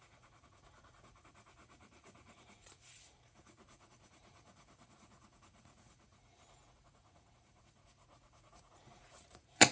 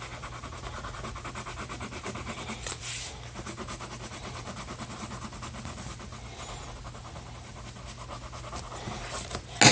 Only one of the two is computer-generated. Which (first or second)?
first